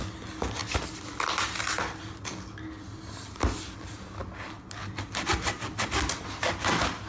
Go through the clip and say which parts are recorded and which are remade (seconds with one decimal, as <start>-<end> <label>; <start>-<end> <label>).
0.0-7.1 recorded